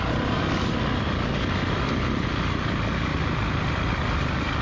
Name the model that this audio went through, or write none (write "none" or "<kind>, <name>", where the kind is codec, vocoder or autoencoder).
vocoder, BigVGAN v2